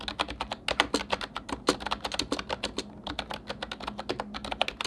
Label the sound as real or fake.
real